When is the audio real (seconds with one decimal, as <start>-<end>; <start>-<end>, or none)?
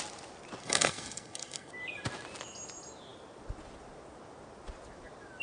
0.0-0.6; 1.7-5.4